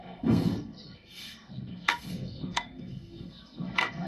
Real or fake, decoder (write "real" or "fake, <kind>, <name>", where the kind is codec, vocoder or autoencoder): fake, codec, SNAC